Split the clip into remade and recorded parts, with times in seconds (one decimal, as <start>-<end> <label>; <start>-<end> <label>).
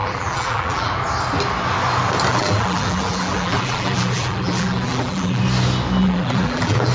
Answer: 0.0-0.9 remade; 0.9-2.3 recorded; 2.3-5.4 remade; 5.4-6.0 recorded; 6.0-6.9 remade